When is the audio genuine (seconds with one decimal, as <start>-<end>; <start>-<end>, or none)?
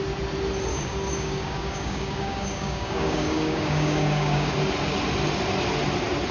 0.0-0.7; 4.5-6.3